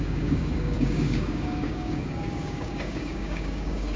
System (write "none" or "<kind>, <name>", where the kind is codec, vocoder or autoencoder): codec, DAC